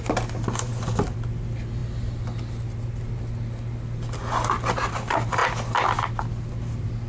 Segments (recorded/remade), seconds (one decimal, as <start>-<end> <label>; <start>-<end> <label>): 0.0-7.1 recorded